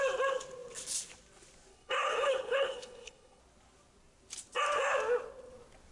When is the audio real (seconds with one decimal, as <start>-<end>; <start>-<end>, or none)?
0.0-1.7; 3.4-5.9